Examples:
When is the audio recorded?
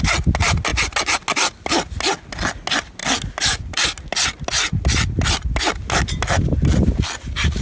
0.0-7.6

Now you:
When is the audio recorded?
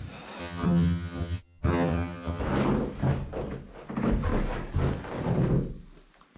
0.0-0.4; 2.4-6.4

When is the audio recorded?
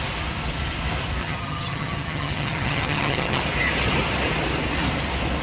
0.0-1.2; 3.4-5.4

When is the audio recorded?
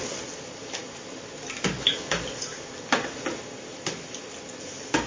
0.0-5.1